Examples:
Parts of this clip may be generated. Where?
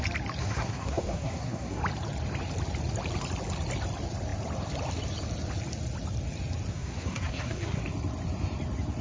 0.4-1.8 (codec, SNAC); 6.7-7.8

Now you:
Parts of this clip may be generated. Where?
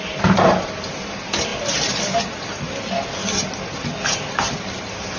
none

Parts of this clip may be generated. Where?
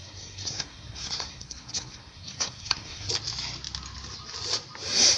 0.0-3.1 (codec, SNAC)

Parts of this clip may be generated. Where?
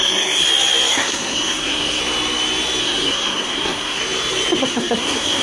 0.0-0.4 (codec, SNAC); 0.9-2.0; 2.8-4.0; 4.6-5.4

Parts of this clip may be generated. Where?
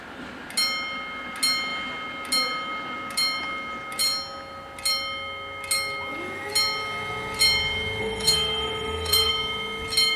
8.0-9.3 (codec, SNAC)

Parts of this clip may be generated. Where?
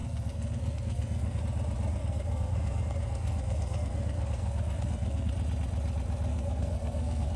0.0-1.4 (codec, SNAC); 1.9-5.3; 6.3-7.4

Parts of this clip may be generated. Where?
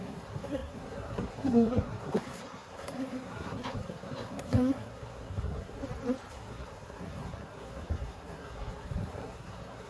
0.0-5.8 (codec, SNAC); 6.3-9.9